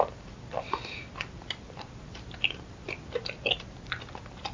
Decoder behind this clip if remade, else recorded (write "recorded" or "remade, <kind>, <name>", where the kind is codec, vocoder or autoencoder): recorded